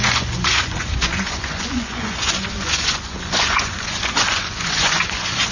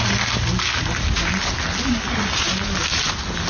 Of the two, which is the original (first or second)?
second